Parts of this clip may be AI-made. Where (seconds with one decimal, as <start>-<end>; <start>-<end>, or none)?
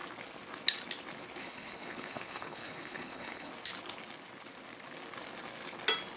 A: 1.4-3.5